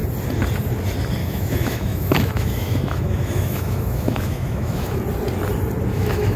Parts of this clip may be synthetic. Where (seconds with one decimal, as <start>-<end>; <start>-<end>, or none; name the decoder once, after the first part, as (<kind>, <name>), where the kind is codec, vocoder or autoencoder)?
1.2-5.0 (autoencoder, DAC-VAE); 5.9-6.4